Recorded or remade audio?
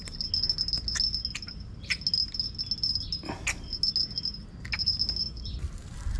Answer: recorded